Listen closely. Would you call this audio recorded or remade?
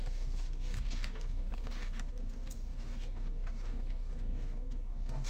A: remade